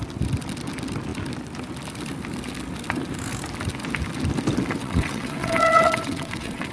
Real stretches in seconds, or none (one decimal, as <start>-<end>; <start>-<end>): 0.0-4.8